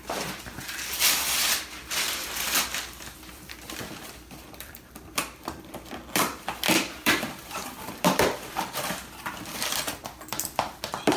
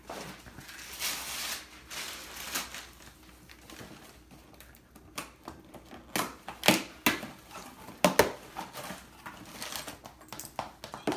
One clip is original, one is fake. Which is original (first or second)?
second